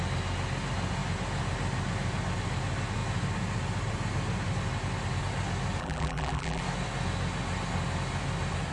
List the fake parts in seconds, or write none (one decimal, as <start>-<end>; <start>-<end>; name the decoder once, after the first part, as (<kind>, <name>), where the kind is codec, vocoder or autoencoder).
5.8-6.6 (vocoder, BigVGAN v2)